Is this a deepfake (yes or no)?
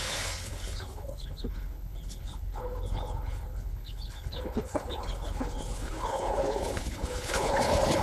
yes